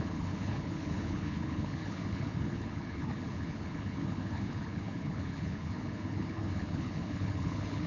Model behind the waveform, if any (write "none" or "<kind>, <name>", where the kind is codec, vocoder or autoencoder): codec, HILCodec